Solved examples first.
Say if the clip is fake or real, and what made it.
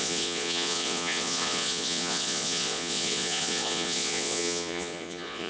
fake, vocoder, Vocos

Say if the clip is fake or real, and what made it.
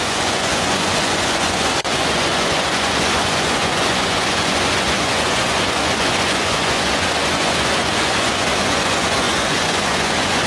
fake, vocoder, Vocos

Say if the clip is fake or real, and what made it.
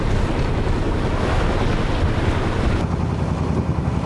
real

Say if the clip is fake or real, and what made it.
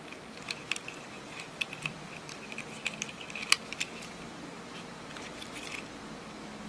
real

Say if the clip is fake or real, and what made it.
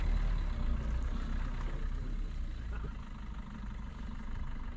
real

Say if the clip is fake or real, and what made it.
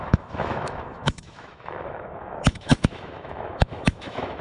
fake, autoencoder, DAC-VAE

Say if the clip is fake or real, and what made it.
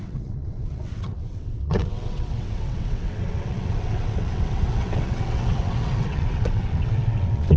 fake, vocoder, WaveNeXt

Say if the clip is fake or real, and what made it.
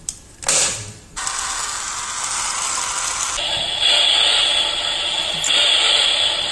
real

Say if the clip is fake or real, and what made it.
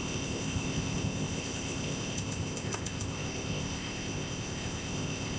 fake, codec, ZipCodec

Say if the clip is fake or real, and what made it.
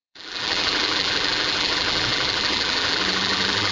fake, vocoder, BigVGAN v2